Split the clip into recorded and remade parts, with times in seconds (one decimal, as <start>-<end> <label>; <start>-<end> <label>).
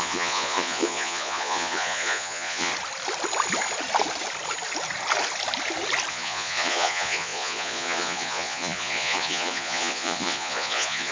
0.0-2.7 remade; 2.7-6.1 recorded; 6.1-11.1 remade